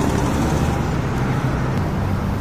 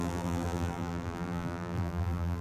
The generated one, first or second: second